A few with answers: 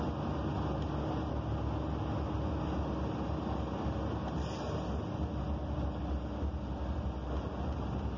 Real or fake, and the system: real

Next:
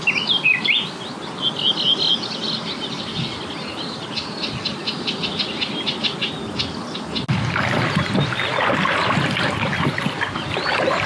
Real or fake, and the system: real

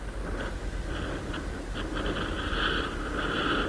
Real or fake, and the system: real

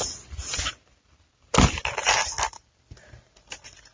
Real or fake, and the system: real